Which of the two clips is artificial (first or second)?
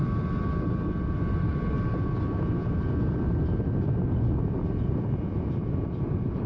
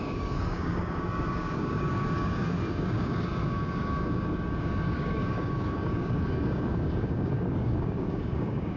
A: second